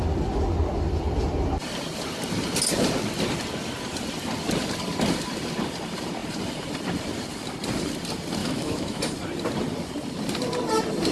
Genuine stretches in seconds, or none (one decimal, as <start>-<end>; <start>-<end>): 0.0-8.4; 9.0-11.1